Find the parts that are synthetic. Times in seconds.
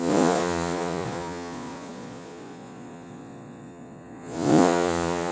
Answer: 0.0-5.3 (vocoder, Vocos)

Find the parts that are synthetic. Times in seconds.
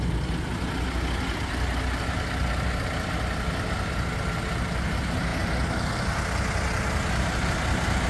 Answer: none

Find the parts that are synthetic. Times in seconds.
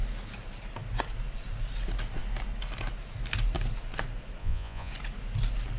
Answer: 4.4-4.9 (vocoder, Vocos)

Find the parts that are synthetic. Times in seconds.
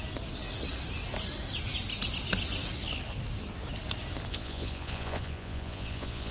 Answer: 4.3-6.3 (vocoder, Vocos)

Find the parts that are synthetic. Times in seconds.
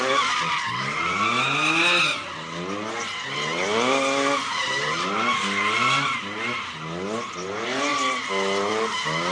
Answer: none